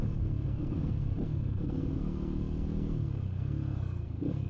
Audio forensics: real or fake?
fake